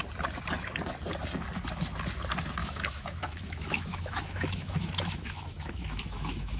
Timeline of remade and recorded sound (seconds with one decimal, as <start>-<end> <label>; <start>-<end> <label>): 0.0-2.6 recorded; 2.6-6.6 remade